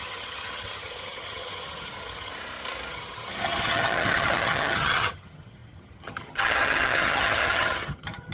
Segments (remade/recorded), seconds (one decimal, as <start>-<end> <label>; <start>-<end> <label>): 0.0-2.3 remade; 2.3-2.9 recorded; 2.9-8.3 remade